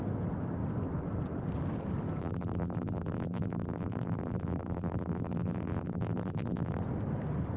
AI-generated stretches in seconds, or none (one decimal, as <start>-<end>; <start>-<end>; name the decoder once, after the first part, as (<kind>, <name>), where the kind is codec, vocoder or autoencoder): 2.2-6.8 (vocoder, BigVGAN v2)